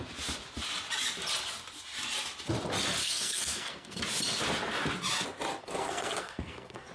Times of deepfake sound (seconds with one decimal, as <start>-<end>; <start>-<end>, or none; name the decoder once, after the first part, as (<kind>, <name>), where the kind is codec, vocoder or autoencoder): 3.0-4.0 (codec, SNAC); 5.6-6.9